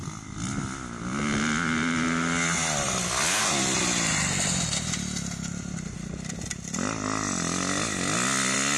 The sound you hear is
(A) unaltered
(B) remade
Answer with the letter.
A